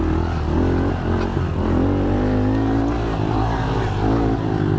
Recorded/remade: recorded